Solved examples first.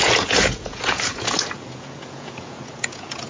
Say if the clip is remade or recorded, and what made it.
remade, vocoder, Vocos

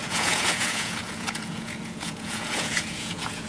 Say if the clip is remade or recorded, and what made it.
remade, vocoder, Vocos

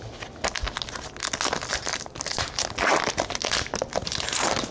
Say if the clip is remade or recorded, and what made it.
recorded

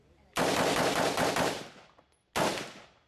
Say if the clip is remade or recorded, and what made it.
recorded